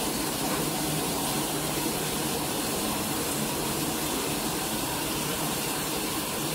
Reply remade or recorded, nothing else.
remade